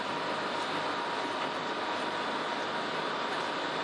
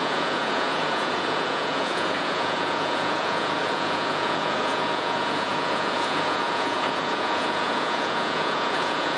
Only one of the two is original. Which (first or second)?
first